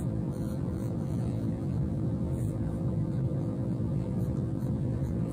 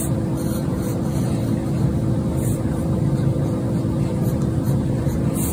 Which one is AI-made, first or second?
first